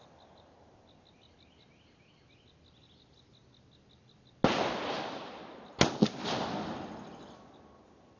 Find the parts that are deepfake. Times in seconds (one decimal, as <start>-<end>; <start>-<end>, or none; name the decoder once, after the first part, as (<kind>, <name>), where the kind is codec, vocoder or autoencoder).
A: none